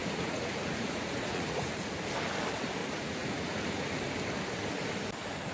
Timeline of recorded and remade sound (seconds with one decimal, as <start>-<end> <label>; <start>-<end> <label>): 0.0-1.9 remade; 1.9-2.8 recorded; 2.8-3.9 remade; 3.9-5.5 recorded